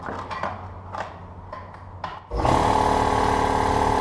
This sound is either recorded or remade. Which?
recorded